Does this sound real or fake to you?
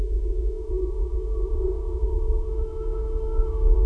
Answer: fake